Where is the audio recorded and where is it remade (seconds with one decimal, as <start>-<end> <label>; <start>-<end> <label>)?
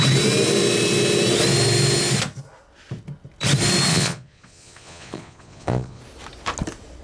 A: 0.0-3.9 recorded; 3.9-6.0 remade; 6.0-7.0 recorded